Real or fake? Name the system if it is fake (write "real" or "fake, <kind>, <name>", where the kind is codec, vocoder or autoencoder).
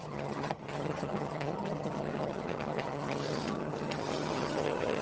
fake, vocoder, HiFi-GAN